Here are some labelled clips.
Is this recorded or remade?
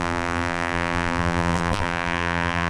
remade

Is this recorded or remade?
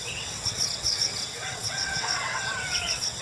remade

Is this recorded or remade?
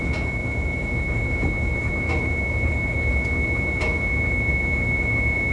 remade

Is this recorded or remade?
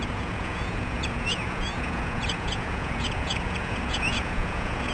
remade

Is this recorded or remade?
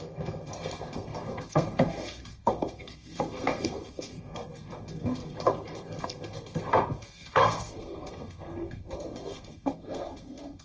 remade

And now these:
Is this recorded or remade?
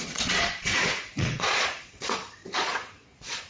remade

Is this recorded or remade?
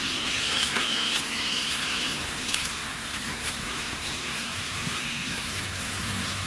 remade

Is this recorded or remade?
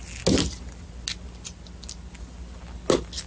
recorded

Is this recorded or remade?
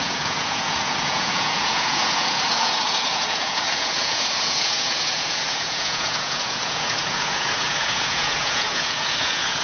remade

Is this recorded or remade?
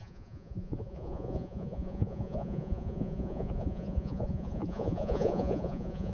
remade